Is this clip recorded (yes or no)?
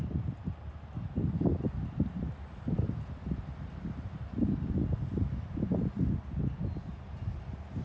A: yes